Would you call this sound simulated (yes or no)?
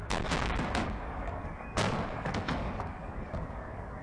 yes